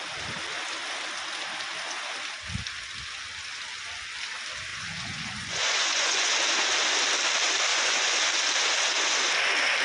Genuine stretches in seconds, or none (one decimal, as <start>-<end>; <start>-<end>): 0.0-4.7; 6.3-7.7; 8.2-9.8